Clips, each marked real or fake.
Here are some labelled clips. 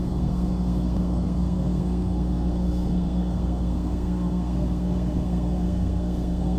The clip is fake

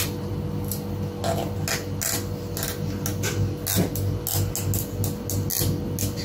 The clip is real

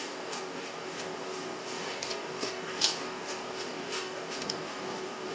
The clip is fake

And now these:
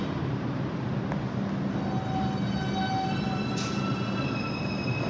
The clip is real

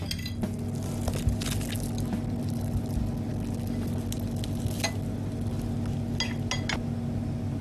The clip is real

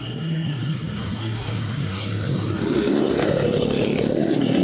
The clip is fake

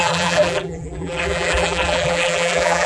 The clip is fake